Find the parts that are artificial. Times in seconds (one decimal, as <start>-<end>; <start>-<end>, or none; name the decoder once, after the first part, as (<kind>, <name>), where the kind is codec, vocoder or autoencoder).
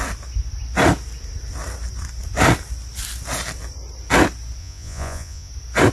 4.6-5.5 (vocoder, Vocos)